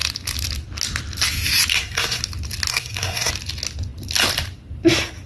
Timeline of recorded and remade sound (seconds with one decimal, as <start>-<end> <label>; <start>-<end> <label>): 0.0-1.7 recorded; 1.7-2.2 remade; 2.2-2.7 recorded; 2.7-3.3 remade; 3.3-5.3 recorded